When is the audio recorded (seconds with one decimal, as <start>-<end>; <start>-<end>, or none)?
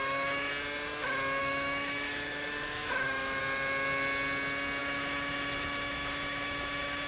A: 0.5-1.4; 3.4-4.8